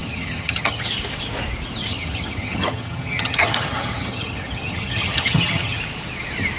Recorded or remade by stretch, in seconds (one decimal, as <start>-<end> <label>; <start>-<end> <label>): 0.0-0.9 remade; 0.9-1.9 recorded; 1.9-5.8 remade; 5.8-6.6 recorded